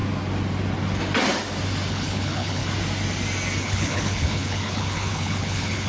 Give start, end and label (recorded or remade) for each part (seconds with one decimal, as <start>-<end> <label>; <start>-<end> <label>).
0.0-1.9 recorded; 1.9-2.6 remade; 2.6-3.6 recorded; 3.6-5.9 remade